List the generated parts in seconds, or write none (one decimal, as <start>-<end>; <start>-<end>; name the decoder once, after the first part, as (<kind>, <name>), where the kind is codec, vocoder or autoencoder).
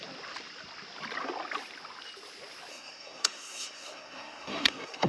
2.7-5.1 (codec, SNAC)